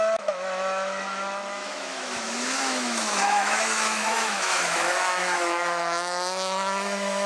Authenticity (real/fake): fake